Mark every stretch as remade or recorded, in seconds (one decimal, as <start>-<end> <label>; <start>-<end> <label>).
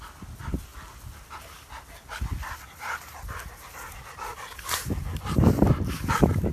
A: 0.0-6.5 recorded